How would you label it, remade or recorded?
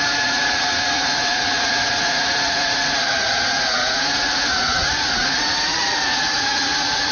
remade